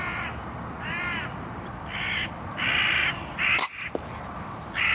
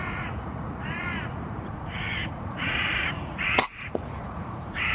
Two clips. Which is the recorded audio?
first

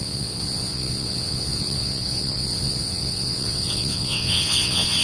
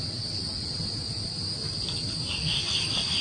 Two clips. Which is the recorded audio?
second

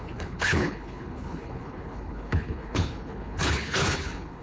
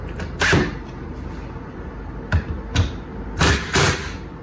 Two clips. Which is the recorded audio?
second